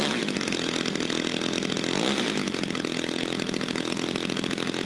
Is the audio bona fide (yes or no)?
yes